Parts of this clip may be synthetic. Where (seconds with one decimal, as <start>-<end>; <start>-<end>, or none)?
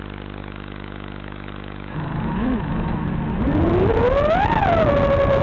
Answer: 0.4-3.0